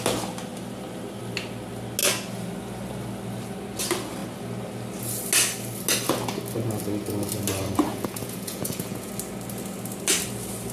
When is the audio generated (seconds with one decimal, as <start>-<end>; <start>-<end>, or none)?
7.9-9.1